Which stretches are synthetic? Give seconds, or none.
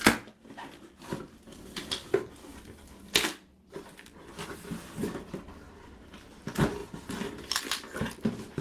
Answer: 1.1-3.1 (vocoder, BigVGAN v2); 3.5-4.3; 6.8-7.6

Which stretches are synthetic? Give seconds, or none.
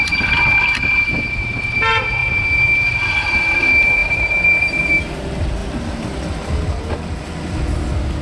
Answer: none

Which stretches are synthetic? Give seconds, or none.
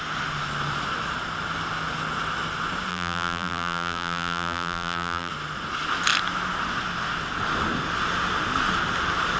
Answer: 2.9-5.3 (vocoder, BigVGAN v2)